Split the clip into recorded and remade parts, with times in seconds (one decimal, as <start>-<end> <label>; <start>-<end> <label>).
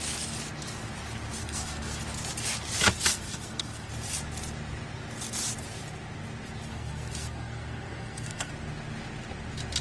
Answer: 0.0-1.4 recorded; 1.4-2.0 remade; 2.0-3.1 recorded; 3.1-3.9 remade; 3.9-6.7 recorded; 6.7-8.5 remade; 8.5-9.8 recorded